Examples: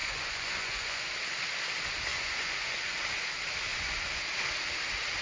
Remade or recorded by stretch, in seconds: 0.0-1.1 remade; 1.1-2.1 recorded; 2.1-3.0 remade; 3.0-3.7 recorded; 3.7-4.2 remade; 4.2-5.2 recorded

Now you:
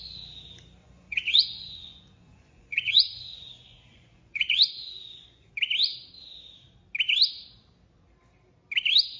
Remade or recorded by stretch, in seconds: 0.0-0.8 recorded; 0.8-5.5 remade; 5.5-9.2 recorded